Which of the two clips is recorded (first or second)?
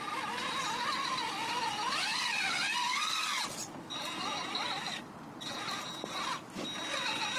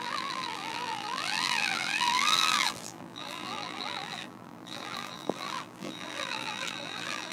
first